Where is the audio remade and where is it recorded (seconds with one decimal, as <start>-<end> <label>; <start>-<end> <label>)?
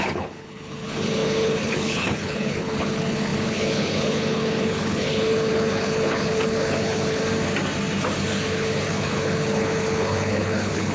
0.0-7.2 remade; 7.2-8.2 recorded; 8.2-10.9 remade